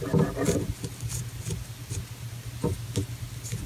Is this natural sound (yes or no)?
yes